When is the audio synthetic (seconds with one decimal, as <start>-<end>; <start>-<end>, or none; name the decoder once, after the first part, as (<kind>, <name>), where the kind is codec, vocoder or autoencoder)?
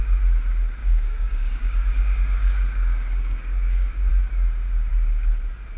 0.8-4.1 (codec, DAC)